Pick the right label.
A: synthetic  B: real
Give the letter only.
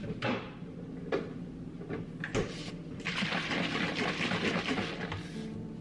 B